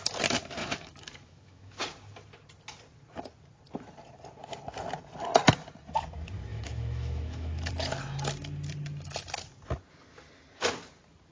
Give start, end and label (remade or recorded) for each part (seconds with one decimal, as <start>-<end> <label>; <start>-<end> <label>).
0.0-0.6 recorded; 0.6-1.8 remade; 1.8-6.5 recorded; 6.5-7.7 remade; 7.7-11.3 recorded